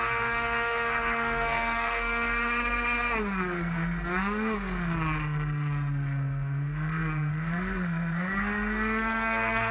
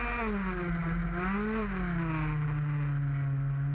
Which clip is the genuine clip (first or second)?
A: second